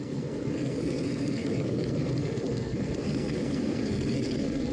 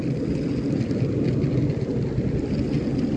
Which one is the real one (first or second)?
second